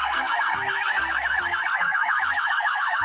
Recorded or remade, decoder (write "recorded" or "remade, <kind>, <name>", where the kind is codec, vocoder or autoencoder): remade, codec, SNAC